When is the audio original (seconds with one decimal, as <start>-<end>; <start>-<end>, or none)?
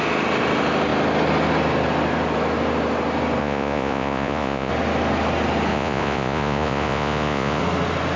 0.0-3.4; 4.7-5.7; 7.6-8.2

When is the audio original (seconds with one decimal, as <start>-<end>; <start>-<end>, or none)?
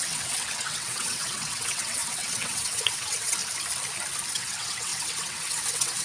3.4-4.3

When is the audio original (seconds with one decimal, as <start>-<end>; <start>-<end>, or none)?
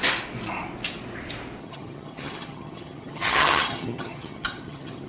0.0-1.6